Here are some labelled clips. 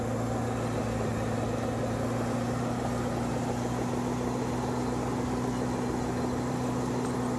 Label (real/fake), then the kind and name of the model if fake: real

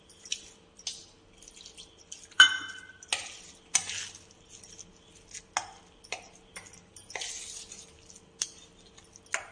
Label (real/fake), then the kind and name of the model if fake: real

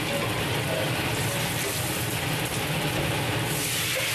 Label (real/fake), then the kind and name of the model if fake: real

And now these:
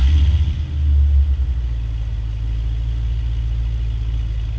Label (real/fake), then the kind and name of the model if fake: real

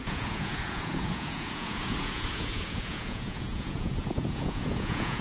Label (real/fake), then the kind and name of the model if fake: fake, vocoder, Vocos